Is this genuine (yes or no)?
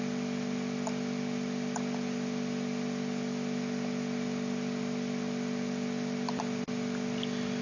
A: yes